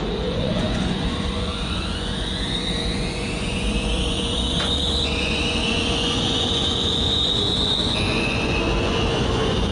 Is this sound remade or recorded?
remade